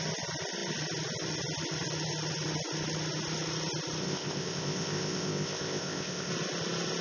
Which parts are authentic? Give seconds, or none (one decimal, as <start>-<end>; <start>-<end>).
0.0-4.0; 6.3-7.0